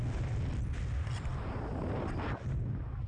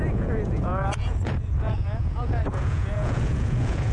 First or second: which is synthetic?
second